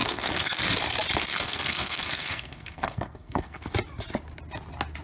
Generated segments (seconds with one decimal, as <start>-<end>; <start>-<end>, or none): 0.0-0.6; 1.3-3.7